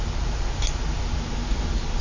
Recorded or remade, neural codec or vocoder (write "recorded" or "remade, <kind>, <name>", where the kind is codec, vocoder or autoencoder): recorded